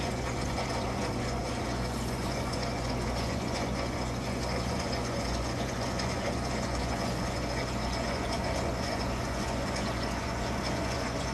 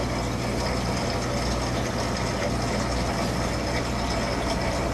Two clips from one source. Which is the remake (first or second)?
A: first